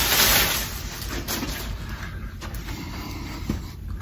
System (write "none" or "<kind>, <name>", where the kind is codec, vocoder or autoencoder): none